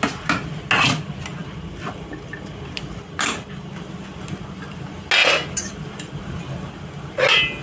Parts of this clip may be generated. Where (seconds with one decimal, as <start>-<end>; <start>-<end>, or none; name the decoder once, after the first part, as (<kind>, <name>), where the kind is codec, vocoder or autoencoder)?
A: none